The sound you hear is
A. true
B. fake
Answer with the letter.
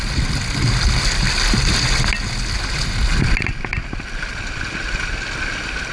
A